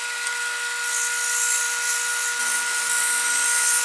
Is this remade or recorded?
recorded